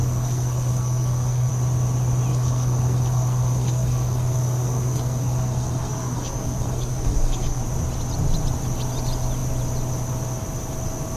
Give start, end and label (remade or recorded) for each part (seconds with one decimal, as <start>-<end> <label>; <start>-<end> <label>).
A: 0.0-1.5 remade; 1.5-2.3 recorded; 2.3-7.6 remade; 7.6-11.2 recorded